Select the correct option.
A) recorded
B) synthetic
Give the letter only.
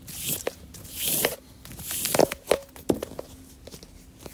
A